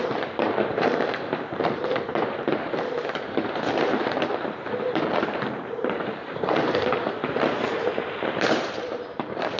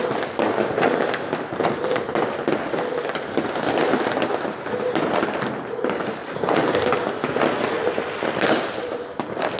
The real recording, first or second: second